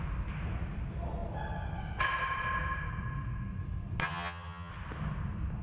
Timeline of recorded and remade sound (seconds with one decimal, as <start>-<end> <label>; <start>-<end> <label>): 0.0-4.0 recorded; 4.0-4.7 remade; 4.7-5.6 recorded

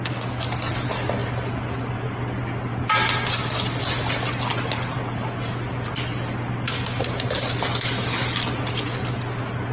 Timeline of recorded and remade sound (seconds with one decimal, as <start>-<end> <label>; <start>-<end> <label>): 0.0-9.7 recorded

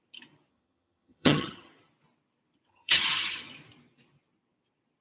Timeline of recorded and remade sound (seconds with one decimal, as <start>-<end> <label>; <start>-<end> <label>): 0.0-0.5 recorded; 0.5-1.7 remade; 1.7-2.7 recorded; 2.7-3.4 remade; 3.4-5.0 recorded

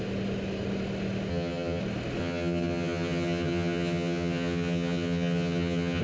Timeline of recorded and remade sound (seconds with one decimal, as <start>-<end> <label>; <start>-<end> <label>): 0.0-1.3 recorded; 1.3-1.8 remade; 1.8-2.2 recorded; 2.2-6.0 remade

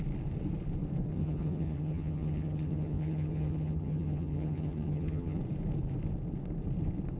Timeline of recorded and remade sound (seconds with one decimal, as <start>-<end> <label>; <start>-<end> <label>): 0.0-1.1 recorded; 1.1-5.4 remade; 5.4-7.2 recorded

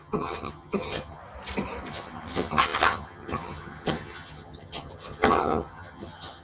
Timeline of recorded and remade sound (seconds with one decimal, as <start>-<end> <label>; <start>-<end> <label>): 0.0-1.2 remade; 1.2-1.9 recorded; 1.9-6.4 remade

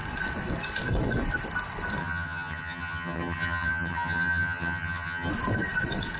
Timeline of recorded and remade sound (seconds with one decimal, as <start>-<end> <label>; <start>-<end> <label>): 0.0-2.0 recorded; 2.0-5.3 remade; 5.3-6.2 recorded